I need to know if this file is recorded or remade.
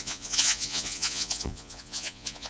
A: remade